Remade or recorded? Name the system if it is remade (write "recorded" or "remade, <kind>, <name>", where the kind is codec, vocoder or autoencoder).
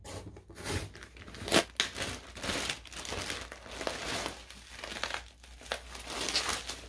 recorded